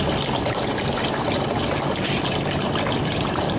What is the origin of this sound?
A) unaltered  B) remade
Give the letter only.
A